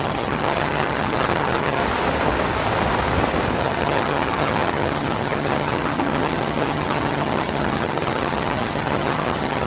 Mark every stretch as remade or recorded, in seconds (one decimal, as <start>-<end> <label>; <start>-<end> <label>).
0.0-1.8 remade; 1.8-3.6 recorded; 3.6-9.7 remade